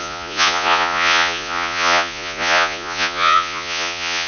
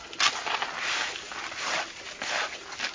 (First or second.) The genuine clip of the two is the second